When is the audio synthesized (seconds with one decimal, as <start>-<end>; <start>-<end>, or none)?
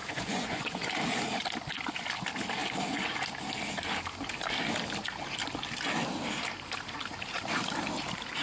0.0-0.9